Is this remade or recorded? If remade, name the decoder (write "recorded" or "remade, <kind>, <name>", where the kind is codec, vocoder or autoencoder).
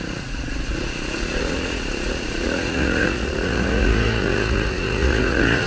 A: remade, vocoder, Vocos